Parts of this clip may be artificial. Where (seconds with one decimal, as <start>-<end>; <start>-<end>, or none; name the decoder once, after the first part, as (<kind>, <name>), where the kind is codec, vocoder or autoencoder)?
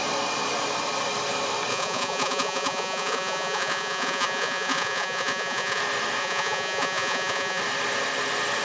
1.7-5.8 (vocoder, Vocos); 6.2-7.6